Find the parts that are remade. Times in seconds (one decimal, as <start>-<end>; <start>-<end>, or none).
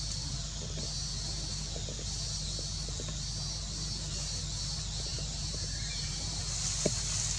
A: 5.1-6.4